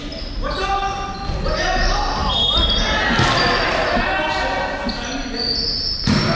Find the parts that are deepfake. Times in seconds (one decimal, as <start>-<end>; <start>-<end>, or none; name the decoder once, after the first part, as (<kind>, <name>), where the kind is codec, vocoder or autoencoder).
2.2-4.0 (vocoder, BigVGAN v2)

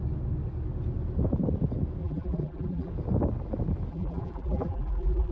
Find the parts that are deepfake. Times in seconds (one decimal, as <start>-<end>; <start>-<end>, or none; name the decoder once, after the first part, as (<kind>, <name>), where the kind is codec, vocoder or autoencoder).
2.0-2.9 (vocoder, BigVGAN v2); 3.9-5.3

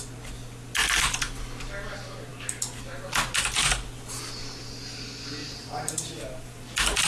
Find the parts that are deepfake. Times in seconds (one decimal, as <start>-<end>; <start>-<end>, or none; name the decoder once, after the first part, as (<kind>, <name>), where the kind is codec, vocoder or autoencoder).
5.4-7.1 (vocoder, BigVGAN v2)

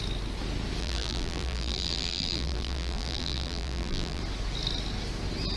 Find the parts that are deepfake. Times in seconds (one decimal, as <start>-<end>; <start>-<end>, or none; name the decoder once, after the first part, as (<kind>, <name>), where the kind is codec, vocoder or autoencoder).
0.8-4.2 (vocoder, BigVGAN v2)

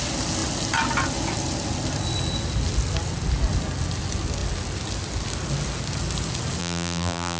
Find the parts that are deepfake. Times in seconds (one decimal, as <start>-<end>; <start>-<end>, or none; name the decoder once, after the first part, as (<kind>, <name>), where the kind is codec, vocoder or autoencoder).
6.6-7.4 (vocoder, BigVGAN v2)

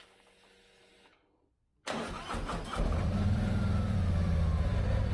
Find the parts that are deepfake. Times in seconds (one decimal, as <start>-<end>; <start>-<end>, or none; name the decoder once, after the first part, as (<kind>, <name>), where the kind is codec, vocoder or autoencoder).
1.7-5.1 (vocoder, BigVGAN v2)

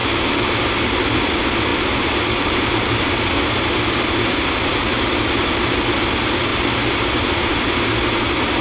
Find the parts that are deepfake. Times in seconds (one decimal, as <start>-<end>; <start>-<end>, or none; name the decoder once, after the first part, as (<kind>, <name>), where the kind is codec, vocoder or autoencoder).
0.0-0.6 (vocoder, BigVGAN v2); 1.7-3.1; 6.5-7.1